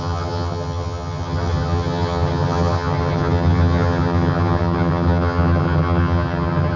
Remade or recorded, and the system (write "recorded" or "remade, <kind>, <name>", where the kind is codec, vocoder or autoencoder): remade, vocoder, HiFi-GAN